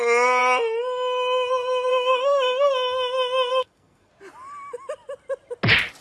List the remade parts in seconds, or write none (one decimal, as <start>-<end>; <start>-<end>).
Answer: 1.9-2.7; 3.5-4.1